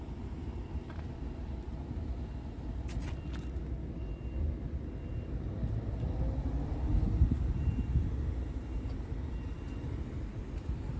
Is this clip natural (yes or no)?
yes